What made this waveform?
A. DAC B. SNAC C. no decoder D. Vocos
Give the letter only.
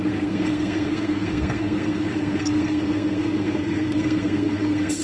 B